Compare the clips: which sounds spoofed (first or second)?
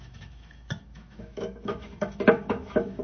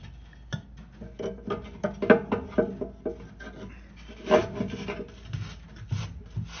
first